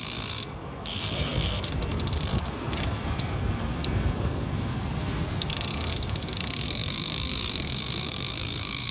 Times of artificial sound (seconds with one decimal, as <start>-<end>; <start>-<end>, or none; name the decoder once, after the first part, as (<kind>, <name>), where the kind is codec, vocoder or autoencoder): 0.0-8.9 (codec, SNAC)